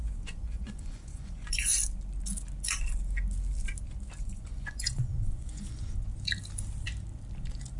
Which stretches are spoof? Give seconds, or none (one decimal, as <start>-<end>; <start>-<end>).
0.0-1.7; 4.2-6.1